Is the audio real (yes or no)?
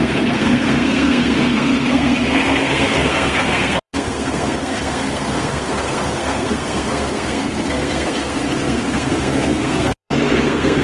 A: no